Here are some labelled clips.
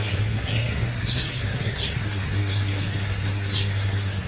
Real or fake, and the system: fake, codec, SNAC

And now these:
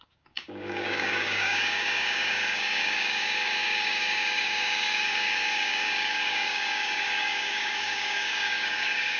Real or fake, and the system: fake, codec, DAC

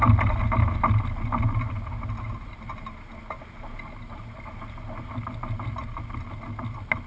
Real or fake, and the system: real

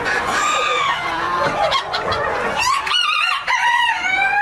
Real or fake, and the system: fake, vocoder, Vocos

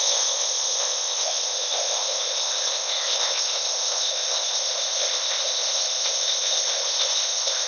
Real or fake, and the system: fake, codec, ZipCodec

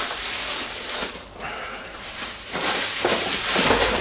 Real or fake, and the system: fake, vocoder, BigVGAN v2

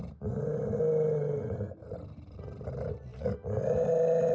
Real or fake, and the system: real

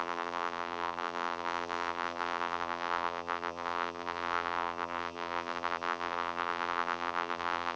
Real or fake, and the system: fake, vocoder, BigVGAN v2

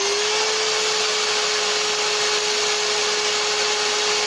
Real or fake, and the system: real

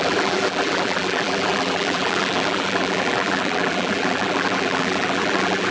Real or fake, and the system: fake, vocoder, BigVGAN v2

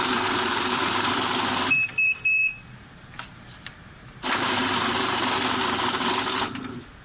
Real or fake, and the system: fake, vocoder, BigVGAN v2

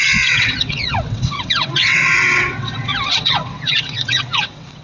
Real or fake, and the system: fake, vocoder, WaveNeXt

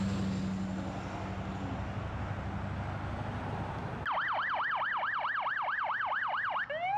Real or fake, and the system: real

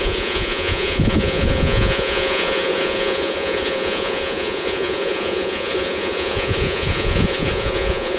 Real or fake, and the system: fake, vocoder, Vocos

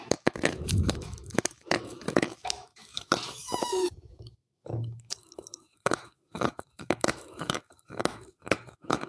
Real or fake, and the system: fake, autoencoder, DAC-VAE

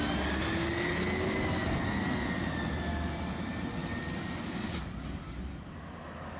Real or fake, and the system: real